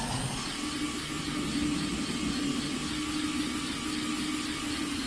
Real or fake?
real